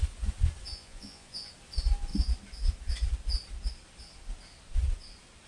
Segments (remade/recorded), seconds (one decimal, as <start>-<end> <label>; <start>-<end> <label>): 0.0-0.7 recorded; 0.7-1.5 remade; 1.5-5.5 recorded